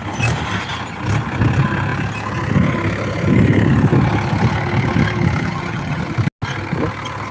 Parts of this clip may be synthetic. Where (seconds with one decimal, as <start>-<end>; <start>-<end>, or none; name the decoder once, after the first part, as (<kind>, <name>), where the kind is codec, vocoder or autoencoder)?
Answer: 5.4-6.0 (vocoder, HiFi-GAN)